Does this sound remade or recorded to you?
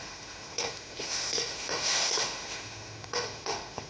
remade